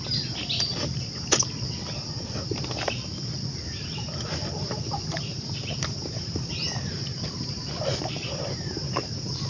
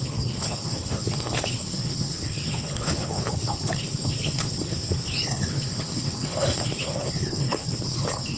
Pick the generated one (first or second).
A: second